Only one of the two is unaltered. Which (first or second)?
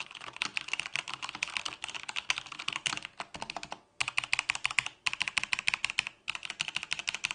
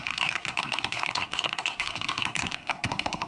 first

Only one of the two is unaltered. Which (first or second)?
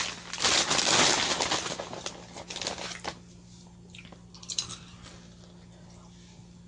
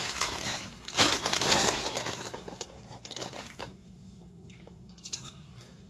first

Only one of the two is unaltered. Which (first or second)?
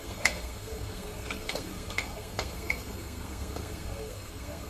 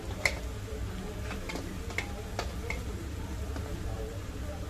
second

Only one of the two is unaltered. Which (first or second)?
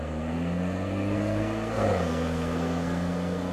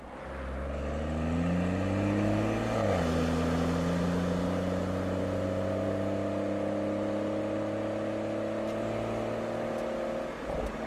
second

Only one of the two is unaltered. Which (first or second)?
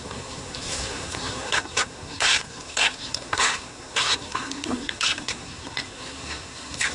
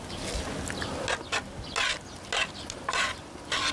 second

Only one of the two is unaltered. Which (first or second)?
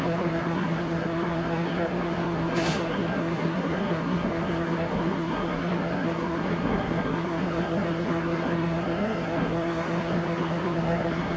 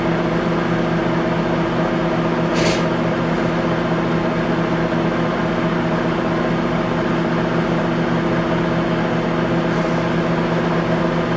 second